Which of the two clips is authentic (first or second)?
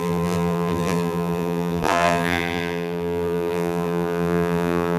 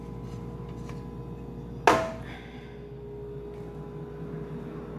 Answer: second